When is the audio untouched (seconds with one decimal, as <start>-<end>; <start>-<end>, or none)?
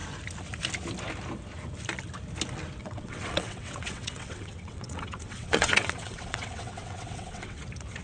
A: 0.0-2.8; 7.6-8.0